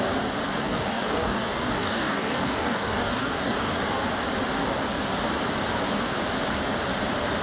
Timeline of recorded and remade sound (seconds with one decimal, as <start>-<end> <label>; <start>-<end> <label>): 0.0-0.6 recorded; 0.6-3.8 remade; 3.8-7.4 recorded